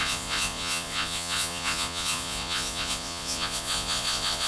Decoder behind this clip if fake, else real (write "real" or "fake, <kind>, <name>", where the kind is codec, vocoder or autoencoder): fake, vocoder, Vocos